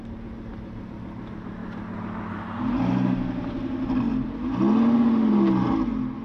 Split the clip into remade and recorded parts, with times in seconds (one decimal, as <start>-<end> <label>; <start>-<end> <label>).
0.0-6.2 recorded